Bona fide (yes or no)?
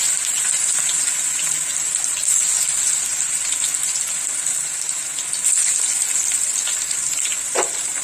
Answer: yes